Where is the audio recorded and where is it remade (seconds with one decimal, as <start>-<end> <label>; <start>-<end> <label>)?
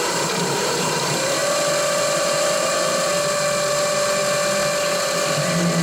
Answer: 0.0-1.4 remade; 1.4-2.2 recorded; 2.2-3.1 remade; 3.1-3.7 recorded; 3.7-4.2 remade; 4.2-5.8 recorded